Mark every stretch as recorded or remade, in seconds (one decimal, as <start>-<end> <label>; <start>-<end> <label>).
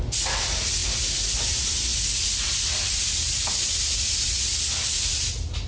0.0-5.7 recorded